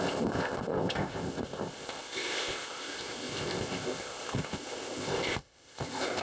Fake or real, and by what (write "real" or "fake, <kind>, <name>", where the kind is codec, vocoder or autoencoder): fake, codec, ZipCodec